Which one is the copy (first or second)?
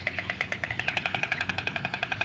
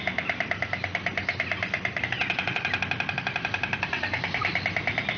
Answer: first